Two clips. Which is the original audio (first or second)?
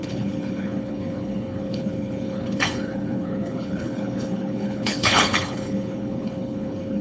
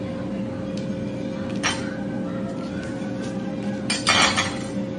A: second